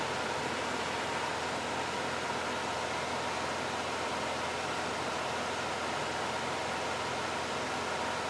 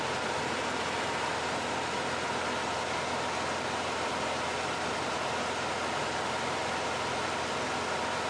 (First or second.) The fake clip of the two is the second